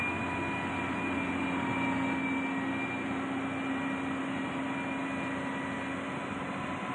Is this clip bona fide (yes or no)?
yes